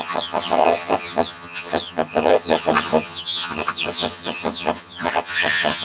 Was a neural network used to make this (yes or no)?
yes